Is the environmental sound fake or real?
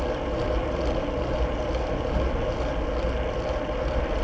real